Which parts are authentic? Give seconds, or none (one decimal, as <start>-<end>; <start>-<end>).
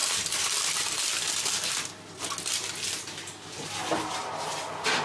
0.0-5.0